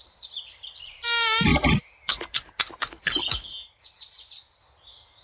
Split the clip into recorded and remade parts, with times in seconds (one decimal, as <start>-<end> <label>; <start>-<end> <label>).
0.0-5.2 recorded